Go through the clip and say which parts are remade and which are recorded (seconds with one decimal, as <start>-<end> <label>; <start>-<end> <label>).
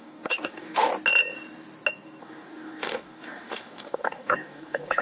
0.0-0.9 remade; 0.9-2.2 recorded; 2.2-5.0 remade